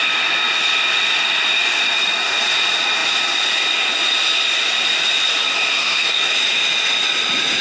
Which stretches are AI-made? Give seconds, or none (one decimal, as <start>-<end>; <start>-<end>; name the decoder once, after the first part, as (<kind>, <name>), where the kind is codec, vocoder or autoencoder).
5.7-6.3 (codec, SNAC)